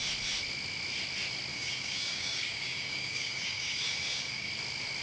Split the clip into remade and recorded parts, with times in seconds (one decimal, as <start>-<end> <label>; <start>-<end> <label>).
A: 0.0-1.5 recorded; 1.5-4.5 remade; 4.5-5.0 recorded